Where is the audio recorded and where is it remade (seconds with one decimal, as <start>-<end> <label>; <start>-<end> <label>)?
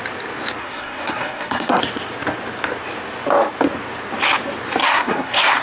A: 0.0-0.6 recorded; 0.6-1.8 remade; 1.8-4.8 recorded; 4.8-5.6 remade